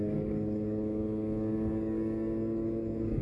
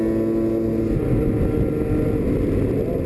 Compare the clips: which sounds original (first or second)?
second